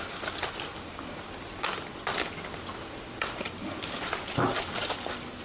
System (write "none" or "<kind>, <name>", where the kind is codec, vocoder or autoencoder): none